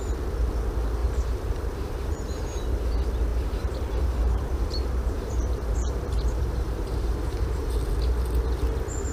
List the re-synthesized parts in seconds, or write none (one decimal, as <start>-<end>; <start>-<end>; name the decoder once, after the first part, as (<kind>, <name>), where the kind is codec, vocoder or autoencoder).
1.0-2.9 (vocoder, BigVGAN v2); 3.3-7.8

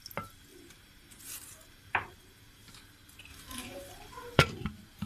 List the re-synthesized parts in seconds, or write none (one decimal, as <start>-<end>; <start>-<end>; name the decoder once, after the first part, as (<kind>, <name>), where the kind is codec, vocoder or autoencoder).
0.5-2.7 (vocoder, BigVGAN v2); 3.3-4.4

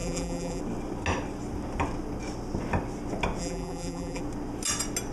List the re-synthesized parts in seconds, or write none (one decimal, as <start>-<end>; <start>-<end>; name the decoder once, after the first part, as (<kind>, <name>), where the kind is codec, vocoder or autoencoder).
0.0-0.6 (vocoder, BigVGAN v2); 3.4-4.2

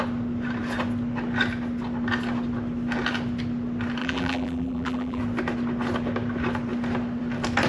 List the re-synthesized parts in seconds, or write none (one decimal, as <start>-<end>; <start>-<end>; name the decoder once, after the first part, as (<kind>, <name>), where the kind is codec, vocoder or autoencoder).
4.0-5.2 (vocoder, BigVGAN v2)